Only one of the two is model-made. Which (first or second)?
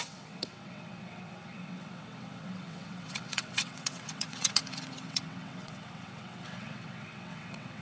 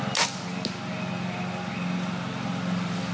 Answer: first